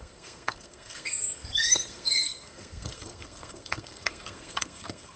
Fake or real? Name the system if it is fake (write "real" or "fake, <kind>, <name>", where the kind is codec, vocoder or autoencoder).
fake, codec, SNAC